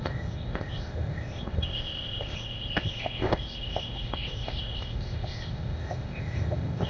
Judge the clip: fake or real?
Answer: fake